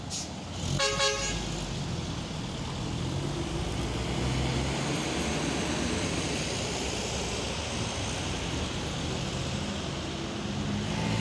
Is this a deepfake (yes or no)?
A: no